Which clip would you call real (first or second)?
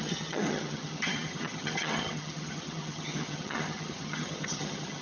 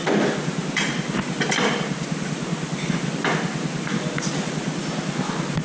second